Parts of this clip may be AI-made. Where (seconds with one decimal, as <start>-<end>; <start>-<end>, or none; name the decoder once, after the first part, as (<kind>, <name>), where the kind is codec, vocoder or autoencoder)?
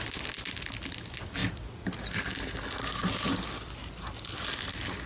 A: none